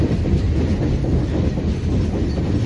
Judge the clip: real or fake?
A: real